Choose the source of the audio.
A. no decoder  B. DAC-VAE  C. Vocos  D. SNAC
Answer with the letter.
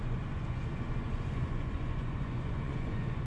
C